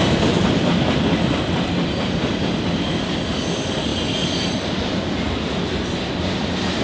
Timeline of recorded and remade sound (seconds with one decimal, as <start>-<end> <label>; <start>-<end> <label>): 0.0-6.8 recorded